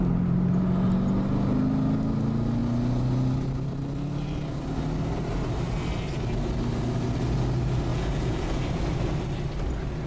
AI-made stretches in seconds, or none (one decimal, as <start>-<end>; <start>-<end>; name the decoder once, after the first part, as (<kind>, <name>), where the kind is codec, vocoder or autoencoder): 7.9-8.6 (vocoder, Vocos)